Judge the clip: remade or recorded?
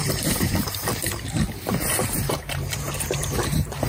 remade